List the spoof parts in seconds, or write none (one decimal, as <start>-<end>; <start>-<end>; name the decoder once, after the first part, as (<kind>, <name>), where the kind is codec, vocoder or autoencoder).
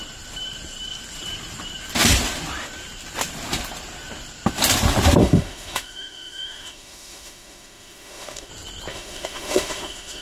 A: 5.2-8.5 (autoencoder, DAC-VAE); 8.9-10.2